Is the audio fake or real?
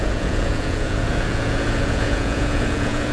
fake